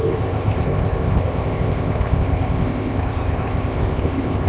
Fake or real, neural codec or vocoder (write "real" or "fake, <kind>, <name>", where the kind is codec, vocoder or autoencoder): fake, codec, ZipCodec